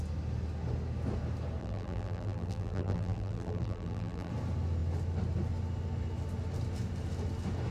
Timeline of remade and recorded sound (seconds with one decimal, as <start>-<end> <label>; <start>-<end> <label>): 0.0-1.6 recorded; 1.6-4.3 remade; 4.3-7.7 recorded